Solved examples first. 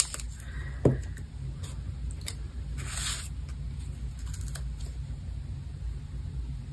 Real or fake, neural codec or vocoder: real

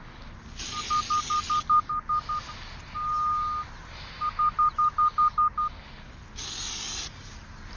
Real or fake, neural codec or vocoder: real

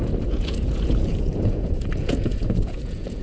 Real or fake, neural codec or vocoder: fake, vocoder, Vocos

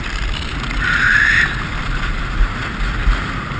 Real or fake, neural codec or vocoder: fake, vocoder, BigVGAN v2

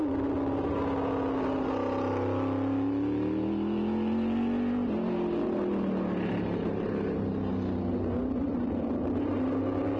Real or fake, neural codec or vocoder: real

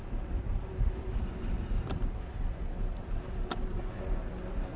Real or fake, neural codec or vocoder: real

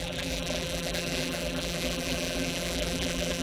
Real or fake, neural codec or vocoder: fake, vocoder, BigVGAN v2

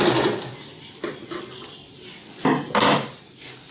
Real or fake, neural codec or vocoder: real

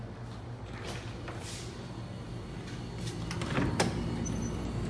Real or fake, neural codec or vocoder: real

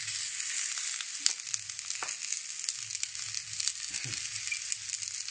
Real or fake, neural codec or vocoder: real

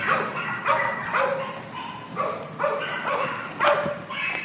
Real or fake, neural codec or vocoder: real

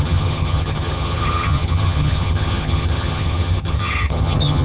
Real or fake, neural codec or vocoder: fake, vocoder, HiFi-GAN